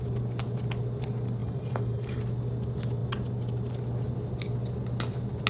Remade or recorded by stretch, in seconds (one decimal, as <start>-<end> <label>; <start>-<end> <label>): 0.0-1.4 recorded; 1.4-2.2 remade; 2.2-5.5 recorded